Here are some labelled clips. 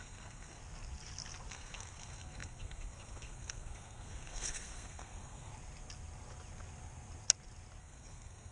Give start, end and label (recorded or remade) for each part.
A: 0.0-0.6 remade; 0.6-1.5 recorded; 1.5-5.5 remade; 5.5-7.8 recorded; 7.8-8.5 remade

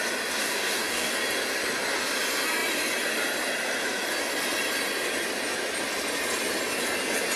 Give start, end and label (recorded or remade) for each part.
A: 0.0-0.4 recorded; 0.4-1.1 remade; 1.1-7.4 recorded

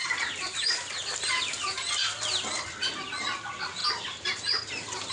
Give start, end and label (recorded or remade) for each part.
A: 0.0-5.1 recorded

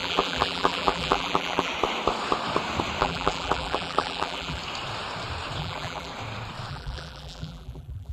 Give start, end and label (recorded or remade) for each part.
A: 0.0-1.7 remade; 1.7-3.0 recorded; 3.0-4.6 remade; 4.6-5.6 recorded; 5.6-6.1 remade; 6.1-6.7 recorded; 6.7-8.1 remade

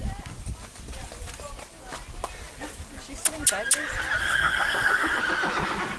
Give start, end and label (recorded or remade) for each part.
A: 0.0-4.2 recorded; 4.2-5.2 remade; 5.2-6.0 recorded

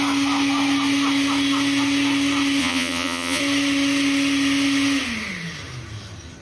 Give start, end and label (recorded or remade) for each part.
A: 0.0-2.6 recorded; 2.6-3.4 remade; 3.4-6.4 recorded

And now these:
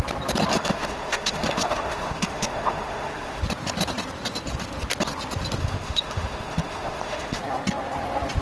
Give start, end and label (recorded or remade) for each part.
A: 0.0-0.5 recorded; 0.5-3.4 remade; 3.4-5.6 recorded; 5.6-7.4 remade; 7.4-8.4 recorded

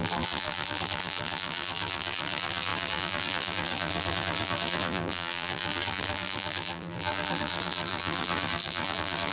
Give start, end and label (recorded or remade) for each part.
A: 0.0-9.3 remade